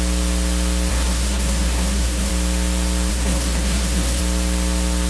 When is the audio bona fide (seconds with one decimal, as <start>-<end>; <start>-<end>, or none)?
0.0-0.9; 2.3-3.1; 4.2-5.1

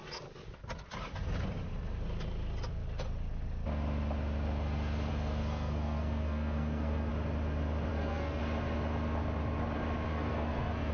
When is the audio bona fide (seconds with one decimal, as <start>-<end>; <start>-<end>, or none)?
0.0-5.1; 7.1-7.9; 8.4-10.1

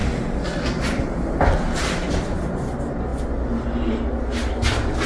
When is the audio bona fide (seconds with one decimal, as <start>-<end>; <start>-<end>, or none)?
0.0-5.1

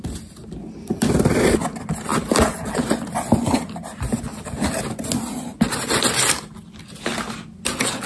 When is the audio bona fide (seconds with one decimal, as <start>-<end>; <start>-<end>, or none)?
0.0-8.1